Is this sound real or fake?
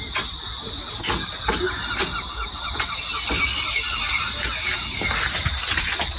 real